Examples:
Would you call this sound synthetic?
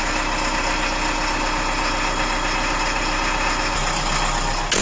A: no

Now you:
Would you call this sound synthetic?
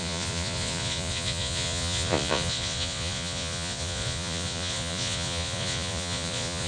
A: yes